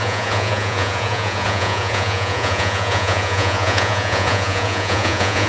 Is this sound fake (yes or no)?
yes